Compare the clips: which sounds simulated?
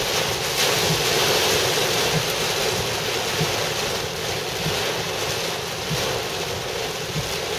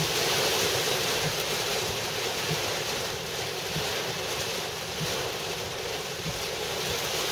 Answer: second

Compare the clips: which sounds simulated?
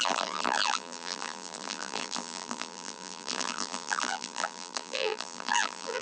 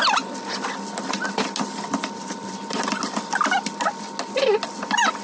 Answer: first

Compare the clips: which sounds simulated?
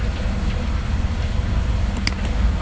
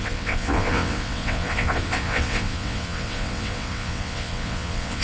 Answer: second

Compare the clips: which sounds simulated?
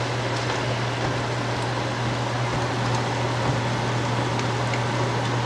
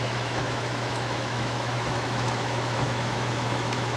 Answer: second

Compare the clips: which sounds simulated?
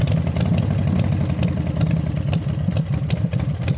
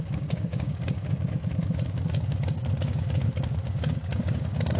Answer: second